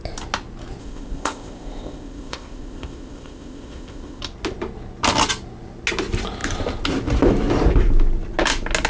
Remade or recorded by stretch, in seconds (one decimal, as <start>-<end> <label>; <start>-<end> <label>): 0.0-0.8 recorded; 0.8-4.2 remade; 4.2-8.9 recorded